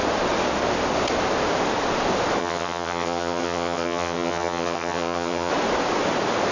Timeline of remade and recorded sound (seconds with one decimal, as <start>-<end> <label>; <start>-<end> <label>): 0.0-2.4 recorded; 2.4-5.5 remade; 5.5-6.5 recorded